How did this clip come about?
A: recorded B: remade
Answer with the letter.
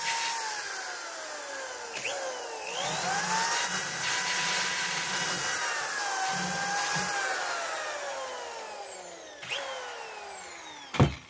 A